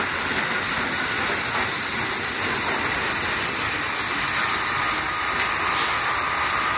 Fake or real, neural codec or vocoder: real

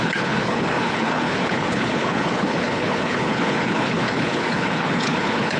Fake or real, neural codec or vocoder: fake, codec, HILCodec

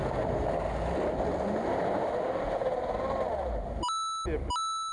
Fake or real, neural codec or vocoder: real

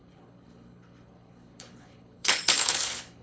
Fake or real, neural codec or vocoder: fake, codec, HILCodec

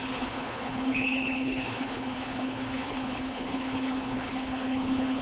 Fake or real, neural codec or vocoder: fake, codec, HILCodec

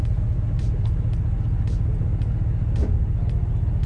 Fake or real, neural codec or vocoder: real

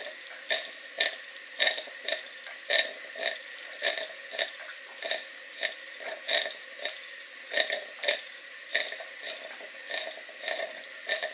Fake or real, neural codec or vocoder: real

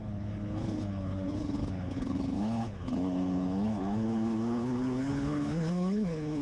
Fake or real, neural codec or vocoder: fake, codec, HILCodec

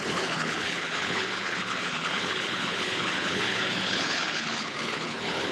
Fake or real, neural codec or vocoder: fake, codec, HILCodec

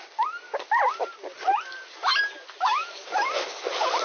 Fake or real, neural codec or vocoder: real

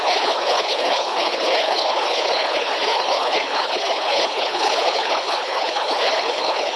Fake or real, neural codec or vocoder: fake, codec, HILCodec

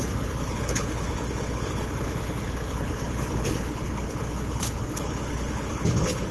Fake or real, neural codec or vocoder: fake, codec, HILCodec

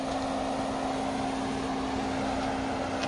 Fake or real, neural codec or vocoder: real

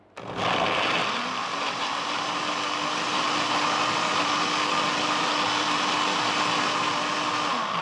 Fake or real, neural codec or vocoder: real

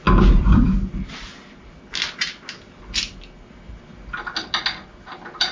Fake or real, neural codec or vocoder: real